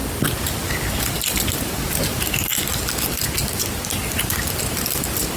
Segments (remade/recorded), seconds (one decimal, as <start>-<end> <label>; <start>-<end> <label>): 0.0-5.4 recorded